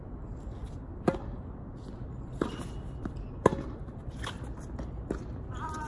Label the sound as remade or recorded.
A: recorded